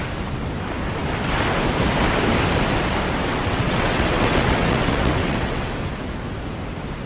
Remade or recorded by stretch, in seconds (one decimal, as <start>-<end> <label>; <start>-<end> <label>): 0.0-3.3 recorded; 3.3-5.7 remade; 5.7-7.1 recorded